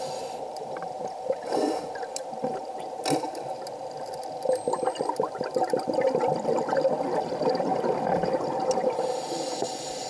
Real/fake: real